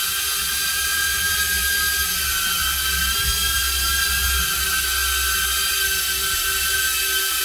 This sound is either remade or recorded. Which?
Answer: recorded